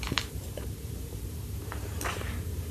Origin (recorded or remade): remade